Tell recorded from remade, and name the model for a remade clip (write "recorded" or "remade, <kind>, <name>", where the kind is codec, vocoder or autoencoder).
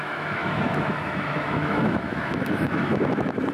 remade, autoencoder, DAC-VAE